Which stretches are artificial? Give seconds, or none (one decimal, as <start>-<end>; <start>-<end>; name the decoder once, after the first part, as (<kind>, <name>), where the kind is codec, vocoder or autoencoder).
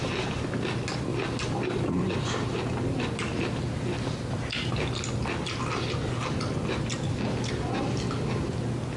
none